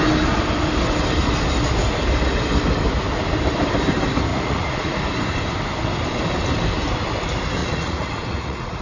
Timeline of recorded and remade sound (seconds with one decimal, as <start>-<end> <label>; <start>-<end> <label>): 0.0-4.3 recorded; 4.3-5.0 remade; 5.0-7.6 recorded; 7.6-8.8 remade